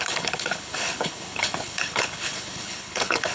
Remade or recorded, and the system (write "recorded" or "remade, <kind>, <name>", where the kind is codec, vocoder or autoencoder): remade, codec, HILCodec